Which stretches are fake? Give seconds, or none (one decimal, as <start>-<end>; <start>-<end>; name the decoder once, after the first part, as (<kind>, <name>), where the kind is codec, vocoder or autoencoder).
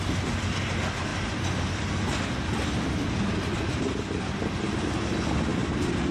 1.1-1.8 (vocoder, BigVGAN v2); 5.6-6.1